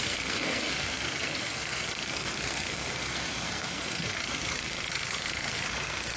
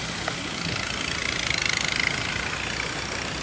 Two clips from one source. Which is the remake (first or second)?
first